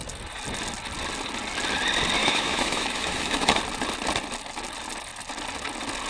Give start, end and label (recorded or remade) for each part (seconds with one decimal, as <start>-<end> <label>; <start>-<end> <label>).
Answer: 0.0-2.2 recorded; 2.2-3.6 remade; 3.6-6.1 recorded